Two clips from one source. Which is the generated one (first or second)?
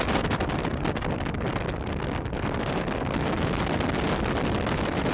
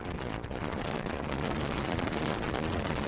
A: second